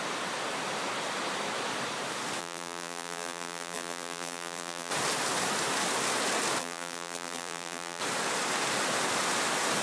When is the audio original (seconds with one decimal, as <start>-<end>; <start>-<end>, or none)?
0.0-2.4; 4.9-6.6; 8.0-9.8